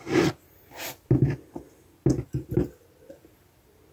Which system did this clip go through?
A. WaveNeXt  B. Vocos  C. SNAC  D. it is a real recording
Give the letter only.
D